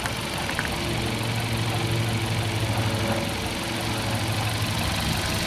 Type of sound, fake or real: real